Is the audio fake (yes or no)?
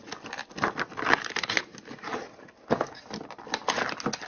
no